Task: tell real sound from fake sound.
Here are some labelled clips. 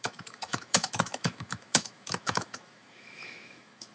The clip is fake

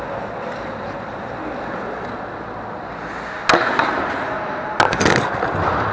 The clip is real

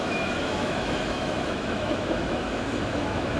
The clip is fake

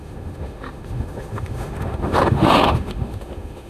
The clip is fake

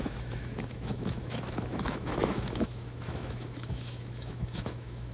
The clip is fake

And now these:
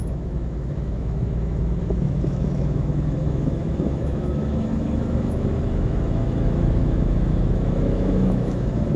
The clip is fake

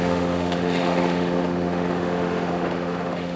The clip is fake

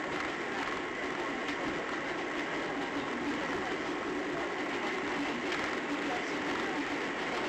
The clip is real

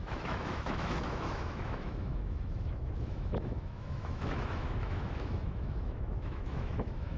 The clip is fake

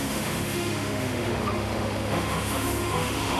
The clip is fake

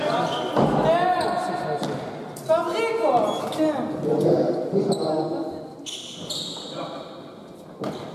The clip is real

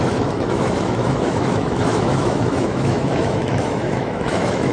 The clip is fake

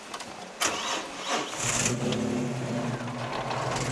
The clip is real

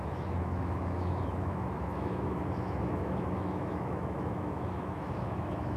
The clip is fake